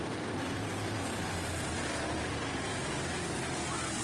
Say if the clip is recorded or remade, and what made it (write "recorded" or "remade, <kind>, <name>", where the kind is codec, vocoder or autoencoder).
recorded